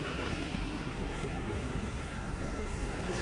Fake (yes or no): yes